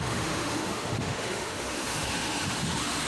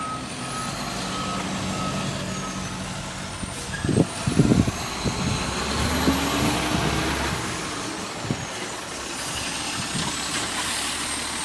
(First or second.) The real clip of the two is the second